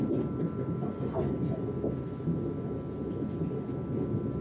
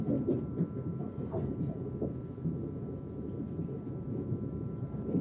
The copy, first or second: second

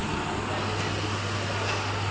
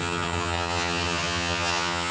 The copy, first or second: second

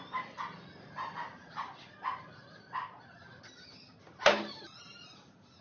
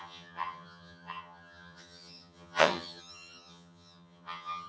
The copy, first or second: second